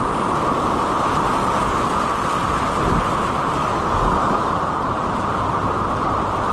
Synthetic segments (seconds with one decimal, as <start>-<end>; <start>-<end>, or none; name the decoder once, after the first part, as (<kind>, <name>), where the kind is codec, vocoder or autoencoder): 1.4-2.0 (codec, DAC); 3.6-5.0